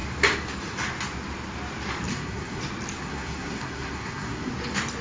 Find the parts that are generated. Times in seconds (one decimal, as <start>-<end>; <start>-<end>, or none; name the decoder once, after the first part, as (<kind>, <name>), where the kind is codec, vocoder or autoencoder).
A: 2.1-2.6 (codec, SNAC); 3.0-4.5